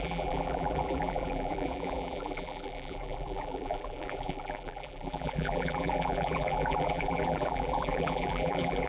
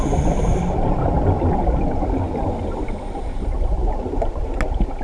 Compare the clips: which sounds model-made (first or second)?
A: first